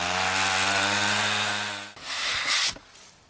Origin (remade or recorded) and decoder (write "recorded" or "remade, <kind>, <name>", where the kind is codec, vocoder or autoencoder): recorded